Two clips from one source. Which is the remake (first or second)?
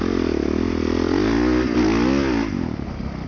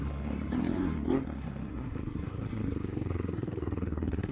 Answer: second